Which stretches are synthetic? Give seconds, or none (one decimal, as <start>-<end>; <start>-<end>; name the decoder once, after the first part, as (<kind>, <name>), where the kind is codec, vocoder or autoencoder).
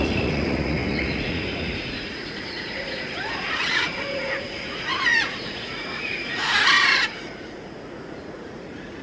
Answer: 0.0-9.0 (vocoder, Vocos)